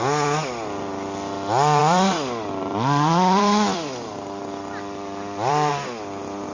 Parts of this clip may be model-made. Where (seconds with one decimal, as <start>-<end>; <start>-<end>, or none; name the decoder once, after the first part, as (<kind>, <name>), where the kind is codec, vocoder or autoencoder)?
1.8-5.7 (vocoder, BigVGAN v2)